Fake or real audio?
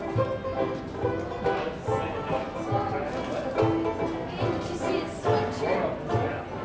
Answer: real